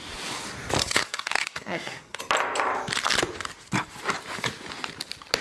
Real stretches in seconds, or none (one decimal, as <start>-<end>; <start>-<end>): 0.0-0.8; 2.2-5.4